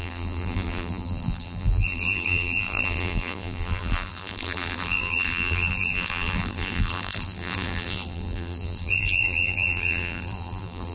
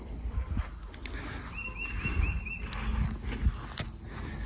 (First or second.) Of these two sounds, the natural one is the second